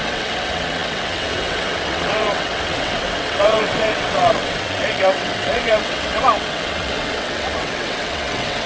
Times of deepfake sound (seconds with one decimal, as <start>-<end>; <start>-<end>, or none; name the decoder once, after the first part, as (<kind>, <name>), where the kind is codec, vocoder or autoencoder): 0.0-8.7 (vocoder, WaveNeXt)